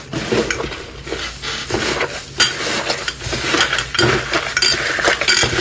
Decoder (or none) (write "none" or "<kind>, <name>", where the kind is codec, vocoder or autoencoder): none